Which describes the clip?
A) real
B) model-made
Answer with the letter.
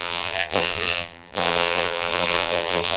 B